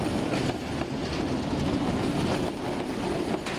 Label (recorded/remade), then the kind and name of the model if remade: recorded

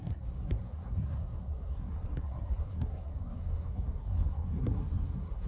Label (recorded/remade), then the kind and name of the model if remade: remade, codec, SNAC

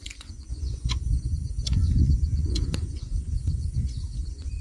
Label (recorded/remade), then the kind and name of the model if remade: remade, vocoder, Vocos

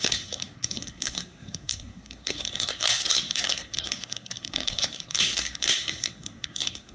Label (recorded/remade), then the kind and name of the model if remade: remade, codec, SNAC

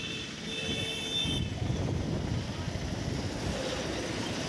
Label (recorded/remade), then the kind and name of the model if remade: recorded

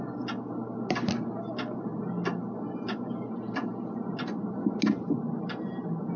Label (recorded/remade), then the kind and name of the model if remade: recorded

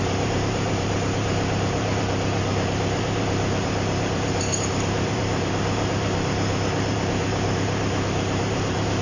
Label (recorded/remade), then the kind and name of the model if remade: remade, vocoder, BigVGAN v2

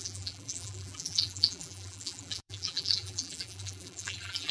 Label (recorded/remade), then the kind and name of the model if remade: remade, vocoder, BigVGAN v2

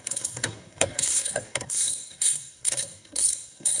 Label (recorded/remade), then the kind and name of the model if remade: remade, codec, SNAC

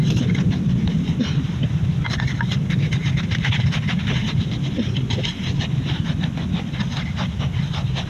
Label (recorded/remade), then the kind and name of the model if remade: remade, vocoder, BigVGAN v2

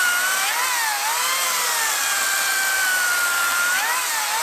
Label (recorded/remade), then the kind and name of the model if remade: recorded